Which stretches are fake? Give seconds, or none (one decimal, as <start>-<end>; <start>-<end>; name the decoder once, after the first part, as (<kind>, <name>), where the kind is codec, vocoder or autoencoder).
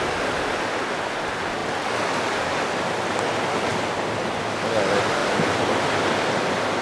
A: none